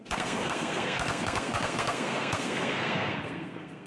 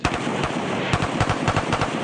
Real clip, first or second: second